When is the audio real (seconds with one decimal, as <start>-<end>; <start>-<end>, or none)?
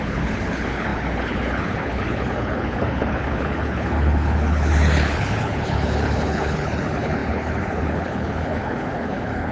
none